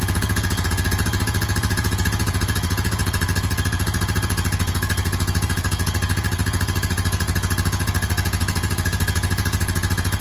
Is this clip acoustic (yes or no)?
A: no